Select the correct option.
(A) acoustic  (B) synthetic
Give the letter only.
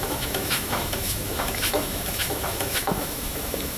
B